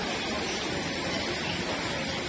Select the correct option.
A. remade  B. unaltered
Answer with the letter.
A